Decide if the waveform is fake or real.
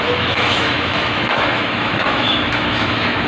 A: fake